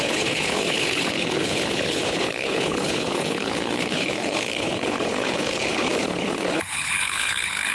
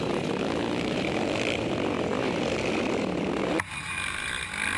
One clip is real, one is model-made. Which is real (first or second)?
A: second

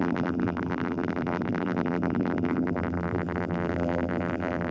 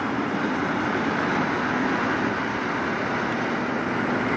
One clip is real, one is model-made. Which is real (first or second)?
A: second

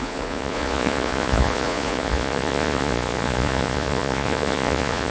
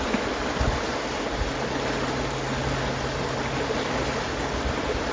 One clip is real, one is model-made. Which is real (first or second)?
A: second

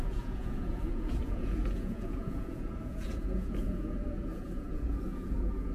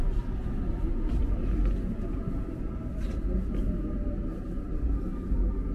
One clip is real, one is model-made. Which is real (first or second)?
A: second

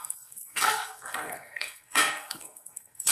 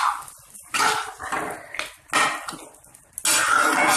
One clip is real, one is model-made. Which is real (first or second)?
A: second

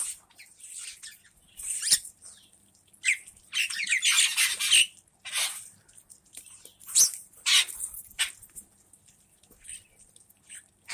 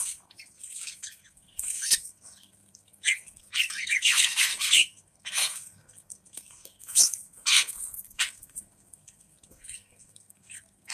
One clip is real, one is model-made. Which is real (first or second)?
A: first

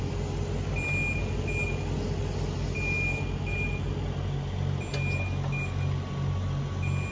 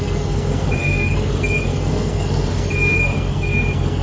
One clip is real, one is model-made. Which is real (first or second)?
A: first